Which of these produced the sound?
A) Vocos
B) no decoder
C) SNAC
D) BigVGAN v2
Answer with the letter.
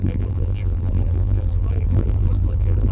D